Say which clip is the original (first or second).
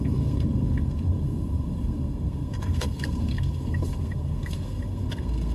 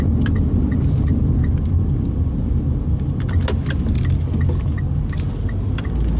second